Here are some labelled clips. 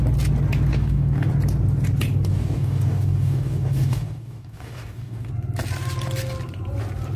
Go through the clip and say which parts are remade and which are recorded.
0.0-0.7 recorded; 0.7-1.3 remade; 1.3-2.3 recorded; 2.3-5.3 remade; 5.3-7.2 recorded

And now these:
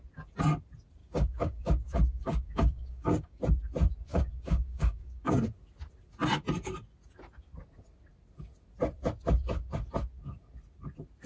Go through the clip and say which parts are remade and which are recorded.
0.0-1.0 recorded; 1.0-3.4 remade; 3.4-4.1 recorded; 4.1-5.4 remade; 5.4-11.3 recorded

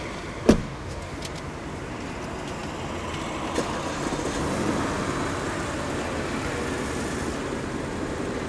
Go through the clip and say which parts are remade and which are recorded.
0.0-0.6 recorded; 0.6-1.1 remade; 1.1-8.5 recorded

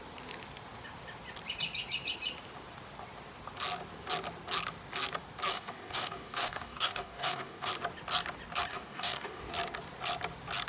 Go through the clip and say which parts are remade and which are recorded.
0.0-5.5 recorded; 5.5-7.7 remade; 7.7-8.7 recorded; 8.7-9.4 remade; 9.4-10.7 recorded

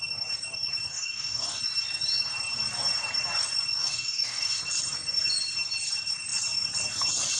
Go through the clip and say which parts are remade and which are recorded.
0.0-0.9 recorded; 0.9-1.6 remade; 1.6-3.8 recorded; 3.8-4.6 remade; 4.6-7.4 recorded

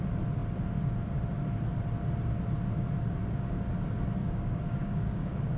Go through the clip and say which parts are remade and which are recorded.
0.0-3.2 recorded; 3.2-3.7 remade; 3.7-4.2 recorded; 4.2-5.6 remade

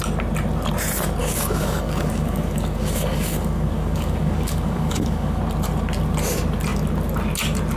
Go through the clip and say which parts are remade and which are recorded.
0.0-1.2 recorded; 1.2-5.4 remade; 5.4-7.8 recorded

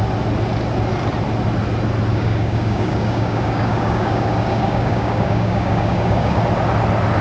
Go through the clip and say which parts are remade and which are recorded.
0.0-2.1 recorded; 2.1-6.4 remade; 6.4-7.2 recorded